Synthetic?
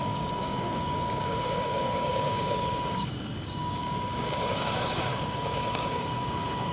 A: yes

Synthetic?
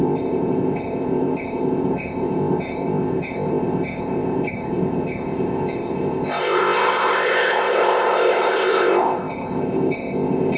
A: yes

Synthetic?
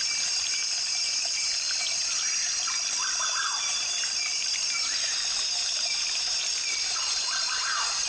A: yes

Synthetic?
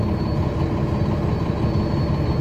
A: no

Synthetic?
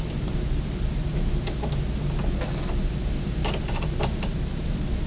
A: no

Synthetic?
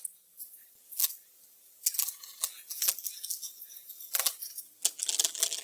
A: yes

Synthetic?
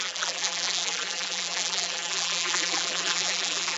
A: yes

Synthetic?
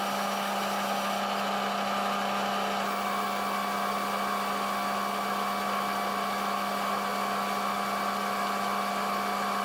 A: no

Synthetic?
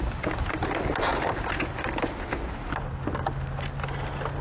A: no